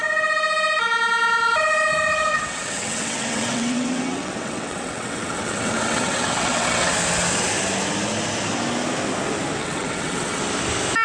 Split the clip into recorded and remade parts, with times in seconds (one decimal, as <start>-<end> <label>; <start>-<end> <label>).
0.0-2.3 recorded; 2.3-6.9 remade; 6.9-9.6 recorded; 9.6-10.4 remade; 10.4-11.0 recorded

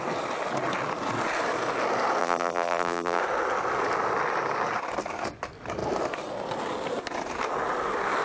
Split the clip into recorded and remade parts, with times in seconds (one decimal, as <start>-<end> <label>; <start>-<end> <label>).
0.0-2.2 recorded; 2.2-3.2 remade; 3.2-8.2 recorded

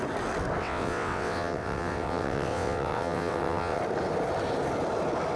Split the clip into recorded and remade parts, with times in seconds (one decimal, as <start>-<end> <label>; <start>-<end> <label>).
0.0-0.6 recorded; 0.6-3.8 remade; 3.8-5.4 recorded

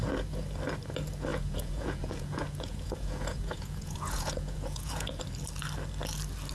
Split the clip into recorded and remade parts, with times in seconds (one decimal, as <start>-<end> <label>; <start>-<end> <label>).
0.0-1.3 recorded; 1.3-5.2 remade; 5.2-6.5 recorded

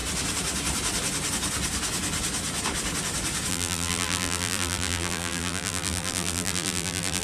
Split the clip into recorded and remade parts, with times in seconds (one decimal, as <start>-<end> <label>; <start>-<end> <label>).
0.0-3.5 recorded; 3.5-7.2 remade